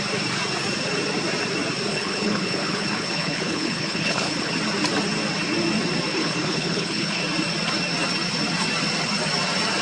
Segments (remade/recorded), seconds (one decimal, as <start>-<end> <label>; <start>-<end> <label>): 0.0-1.9 recorded; 1.9-4.5 remade; 4.5-6.1 recorded; 6.1-7.2 remade; 7.2-9.8 recorded